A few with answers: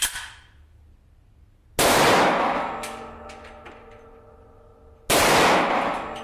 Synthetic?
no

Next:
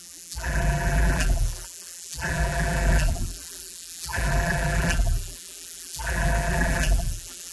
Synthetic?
yes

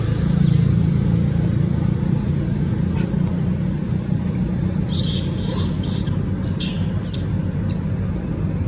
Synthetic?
no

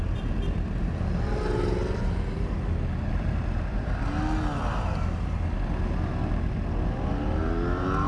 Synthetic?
no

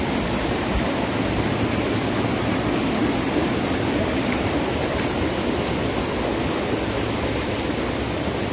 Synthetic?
no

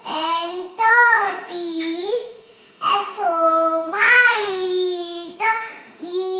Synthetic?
yes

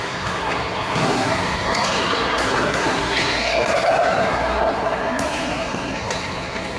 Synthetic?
yes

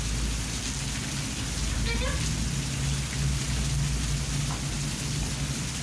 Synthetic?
no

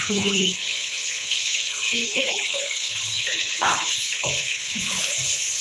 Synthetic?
yes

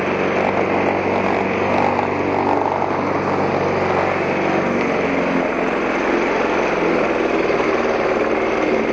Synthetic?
no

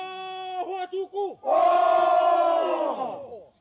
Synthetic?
no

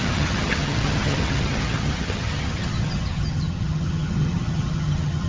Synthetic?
yes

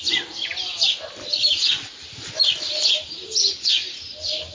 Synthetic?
no